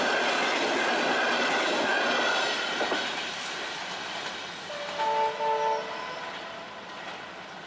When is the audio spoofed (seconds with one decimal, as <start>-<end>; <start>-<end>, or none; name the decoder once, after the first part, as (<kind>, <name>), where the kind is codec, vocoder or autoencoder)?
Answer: none